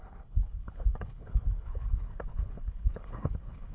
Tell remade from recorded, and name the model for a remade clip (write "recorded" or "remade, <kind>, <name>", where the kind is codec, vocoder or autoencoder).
remade, codec, HILCodec